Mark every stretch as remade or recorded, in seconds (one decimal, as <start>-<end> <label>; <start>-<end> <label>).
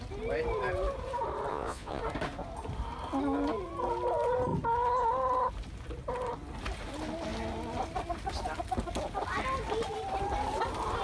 0.0-1.5 recorded; 1.5-2.0 remade; 2.0-11.0 recorded